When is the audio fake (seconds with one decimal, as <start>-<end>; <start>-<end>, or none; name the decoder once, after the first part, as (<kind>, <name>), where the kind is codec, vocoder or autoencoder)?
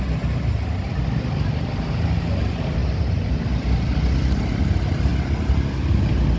none